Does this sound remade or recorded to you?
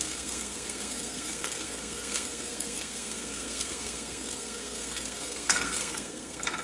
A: remade